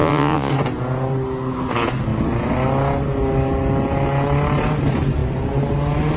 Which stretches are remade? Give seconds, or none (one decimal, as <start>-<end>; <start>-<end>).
0.0-0.5